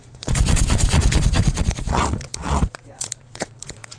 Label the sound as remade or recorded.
remade